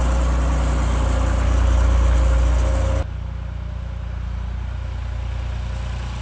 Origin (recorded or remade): recorded